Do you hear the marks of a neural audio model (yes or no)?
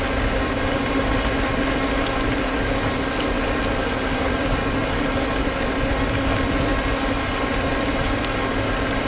no